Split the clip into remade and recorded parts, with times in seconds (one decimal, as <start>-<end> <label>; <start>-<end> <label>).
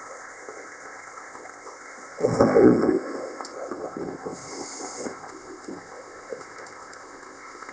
0.0-7.7 remade